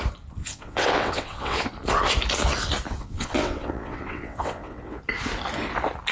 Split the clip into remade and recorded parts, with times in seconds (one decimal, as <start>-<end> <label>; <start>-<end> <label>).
0.0-0.4 recorded; 0.4-1.7 remade; 1.7-3.0 recorded; 3.0-5.0 remade; 5.0-6.1 recorded